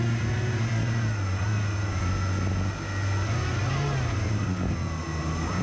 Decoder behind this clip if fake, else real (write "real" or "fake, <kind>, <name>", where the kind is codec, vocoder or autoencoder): real